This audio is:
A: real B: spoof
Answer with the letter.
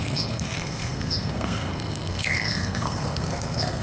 B